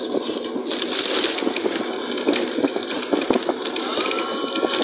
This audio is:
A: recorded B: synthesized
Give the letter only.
B